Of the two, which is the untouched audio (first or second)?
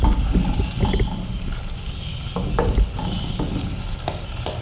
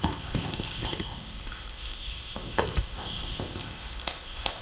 first